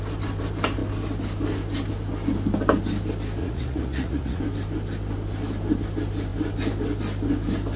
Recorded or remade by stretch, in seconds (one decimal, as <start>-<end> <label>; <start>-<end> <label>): 0.0-3.4 recorded; 3.4-4.4 remade; 4.4-7.8 recorded